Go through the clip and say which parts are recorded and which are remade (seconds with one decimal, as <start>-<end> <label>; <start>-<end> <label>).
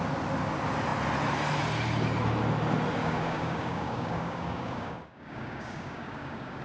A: 0.0-3.0 recorded; 3.0-6.6 remade